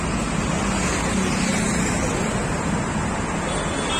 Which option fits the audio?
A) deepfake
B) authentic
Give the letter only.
B